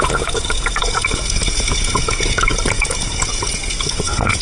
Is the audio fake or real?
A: fake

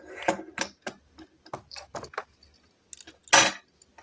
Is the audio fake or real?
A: real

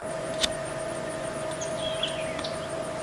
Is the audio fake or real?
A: fake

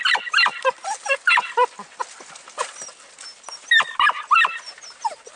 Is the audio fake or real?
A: real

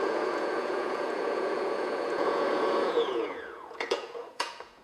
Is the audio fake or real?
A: fake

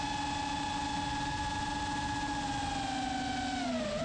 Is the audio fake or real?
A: real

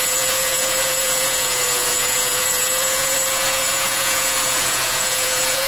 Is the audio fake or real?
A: fake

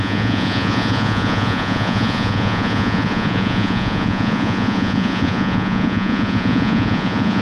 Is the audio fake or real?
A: fake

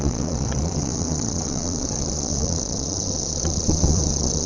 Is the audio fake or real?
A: fake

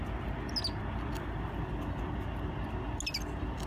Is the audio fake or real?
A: real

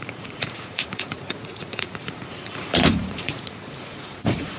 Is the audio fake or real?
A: fake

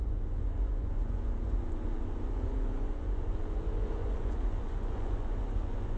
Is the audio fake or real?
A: fake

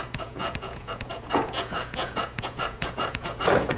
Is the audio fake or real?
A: fake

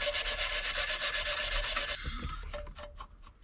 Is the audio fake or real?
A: real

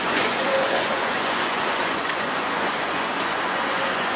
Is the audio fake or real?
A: fake